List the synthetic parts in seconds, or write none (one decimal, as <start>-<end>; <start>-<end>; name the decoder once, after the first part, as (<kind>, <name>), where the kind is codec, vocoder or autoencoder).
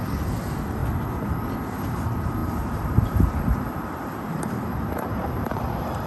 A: 2.4-6.1 (vocoder, BigVGAN v2)